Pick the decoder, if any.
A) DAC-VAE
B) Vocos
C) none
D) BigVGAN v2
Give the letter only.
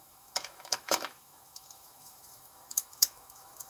A